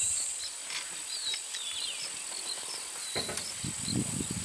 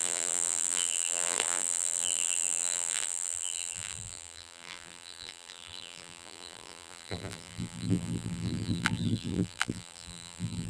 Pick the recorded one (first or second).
first